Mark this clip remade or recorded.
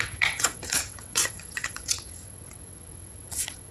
remade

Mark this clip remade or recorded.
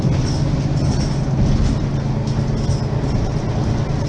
recorded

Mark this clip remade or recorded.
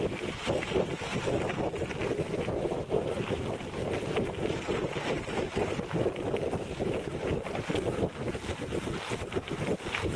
recorded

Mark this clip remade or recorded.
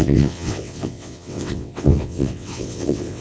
remade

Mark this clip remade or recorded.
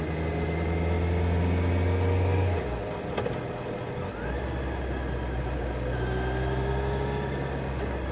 recorded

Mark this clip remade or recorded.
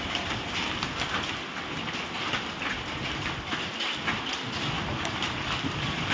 recorded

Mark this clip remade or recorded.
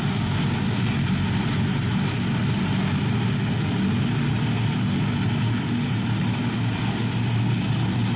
recorded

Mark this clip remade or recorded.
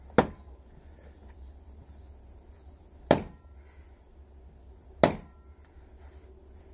recorded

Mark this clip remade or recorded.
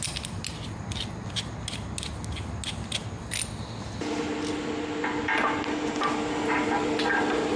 recorded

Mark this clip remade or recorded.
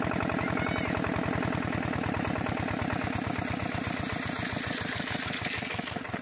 recorded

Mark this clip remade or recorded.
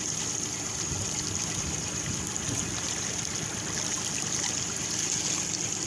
recorded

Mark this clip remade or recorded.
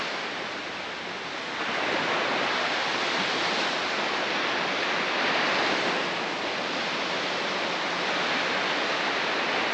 recorded